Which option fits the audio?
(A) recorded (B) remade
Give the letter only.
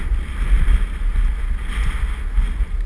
A